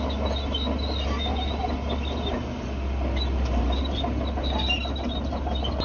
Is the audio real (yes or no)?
yes